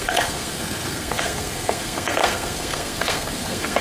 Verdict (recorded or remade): remade